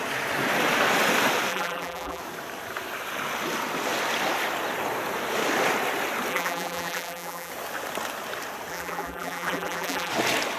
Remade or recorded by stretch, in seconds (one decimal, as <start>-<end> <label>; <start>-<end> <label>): 0.0-1.5 recorded; 1.5-2.2 remade; 2.2-6.3 recorded; 6.3-7.5 remade; 7.5-8.7 recorded; 8.7-10.1 remade; 10.1-10.6 recorded